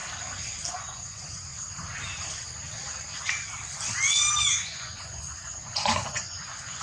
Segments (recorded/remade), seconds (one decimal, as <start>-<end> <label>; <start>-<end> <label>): 0.0-0.7 recorded; 0.7-1.5 remade; 1.5-4.3 recorded; 4.3-6.8 remade

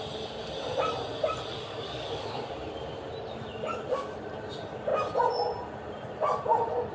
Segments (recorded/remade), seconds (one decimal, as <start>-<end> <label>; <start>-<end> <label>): 0.0-1.5 recorded; 1.5-2.5 remade; 2.5-6.9 recorded

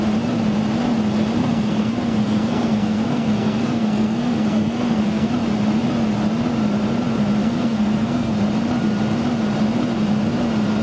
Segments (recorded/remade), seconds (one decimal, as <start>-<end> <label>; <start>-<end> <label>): 0.0-1.4 recorded; 1.4-5.3 remade; 5.3-7.4 recorded; 7.4-8.3 remade; 8.3-10.8 recorded

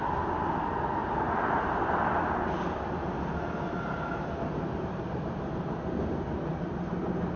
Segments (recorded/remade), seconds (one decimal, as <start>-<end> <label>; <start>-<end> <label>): 0.0-7.4 recorded

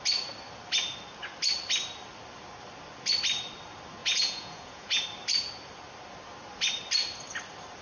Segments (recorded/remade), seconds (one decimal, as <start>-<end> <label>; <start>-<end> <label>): 0.0-4.0 recorded; 4.0-5.0 remade; 5.0-7.8 recorded

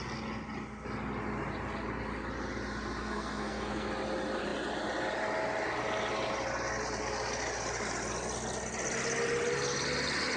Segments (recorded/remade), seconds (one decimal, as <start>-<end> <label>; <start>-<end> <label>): 0.0-3.0 recorded; 3.0-3.9 remade; 3.9-10.4 recorded

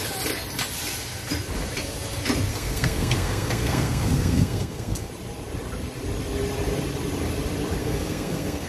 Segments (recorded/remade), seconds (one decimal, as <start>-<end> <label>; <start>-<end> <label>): 0.0-2.5 recorded; 2.5-5.1 remade; 5.1-7.8 recorded; 7.8-8.7 remade